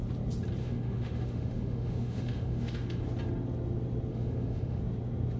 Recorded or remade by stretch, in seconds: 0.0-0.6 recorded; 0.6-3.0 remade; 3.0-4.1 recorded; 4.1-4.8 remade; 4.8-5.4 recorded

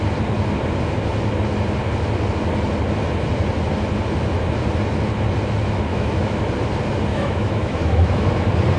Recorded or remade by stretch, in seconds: 0.0-5.9 recorded; 5.9-6.5 remade; 6.5-7.1 recorded; 7.1-8.3 remade; 8.3-8.8 recorded

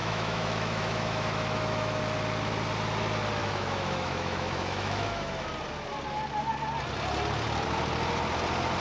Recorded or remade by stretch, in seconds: 0.0-2.0 remade; 2.0-3.4 recorded; 3.4-5.5 remade; 5.5-8.8 recorded